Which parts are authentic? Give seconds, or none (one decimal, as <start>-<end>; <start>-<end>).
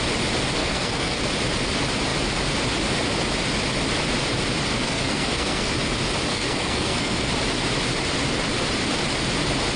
0.0-0.6; 1.2-4.7; 5.7-6.3; 7.3-9.8